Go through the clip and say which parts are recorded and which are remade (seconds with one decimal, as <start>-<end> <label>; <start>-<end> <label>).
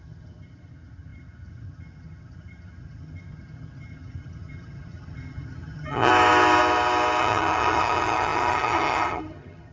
0.0-6.1 remade; 6.1-7.2 recorded; 7.2-9.7 remade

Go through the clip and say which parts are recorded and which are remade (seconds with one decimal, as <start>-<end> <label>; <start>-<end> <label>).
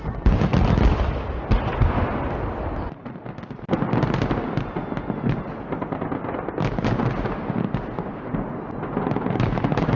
0.0-10.0 recorded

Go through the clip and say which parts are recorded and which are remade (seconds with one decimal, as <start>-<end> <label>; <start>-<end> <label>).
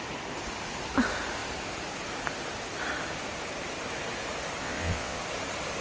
0.0-4.6 recorded; 4.6-5.2 remade; 5.2-5.8 recorded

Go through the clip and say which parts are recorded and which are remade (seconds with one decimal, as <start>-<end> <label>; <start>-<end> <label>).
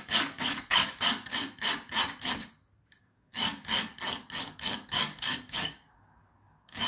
0.0-1.3 remade; 1.3-3.0 recorded; 3.0-3.9 remade; 3.9-4.4 recorded; 4.4-6.9 remade